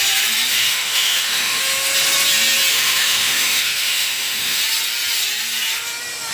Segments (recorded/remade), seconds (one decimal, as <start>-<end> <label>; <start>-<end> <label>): 0.0-0.5 recorded; 0.5-1.6 remade; 1.6-2.7 recorded; 2.7-4.6 remade; 4.6-6.3 recorded